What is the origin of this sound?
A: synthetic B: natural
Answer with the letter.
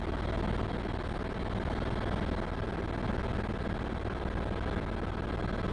B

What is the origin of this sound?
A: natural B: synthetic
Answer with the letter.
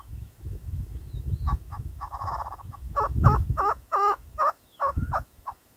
B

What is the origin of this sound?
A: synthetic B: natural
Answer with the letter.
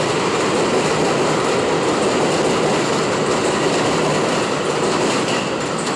B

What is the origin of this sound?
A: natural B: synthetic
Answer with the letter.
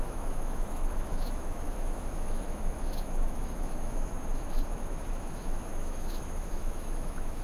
B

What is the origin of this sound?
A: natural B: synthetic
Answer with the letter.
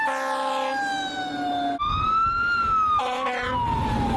A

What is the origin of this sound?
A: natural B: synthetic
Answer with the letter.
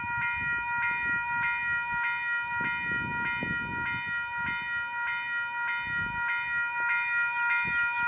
A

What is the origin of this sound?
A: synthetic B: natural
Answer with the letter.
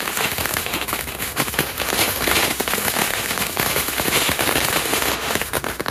A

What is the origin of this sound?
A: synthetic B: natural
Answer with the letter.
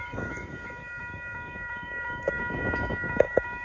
A